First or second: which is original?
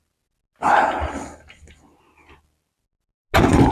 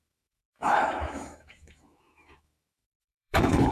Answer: first